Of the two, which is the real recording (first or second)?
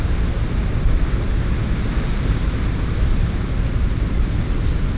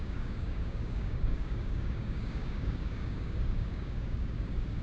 first